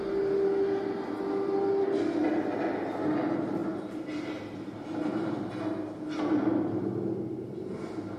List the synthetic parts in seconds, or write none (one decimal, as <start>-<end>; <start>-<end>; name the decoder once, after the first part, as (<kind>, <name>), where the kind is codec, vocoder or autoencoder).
none